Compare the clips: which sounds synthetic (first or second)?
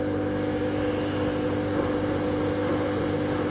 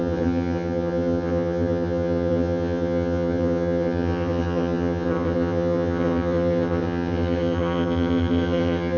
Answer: second